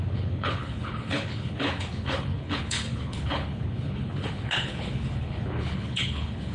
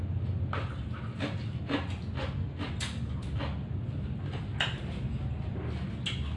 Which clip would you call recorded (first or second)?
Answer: second